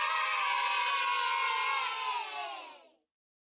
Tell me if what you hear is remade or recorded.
recorded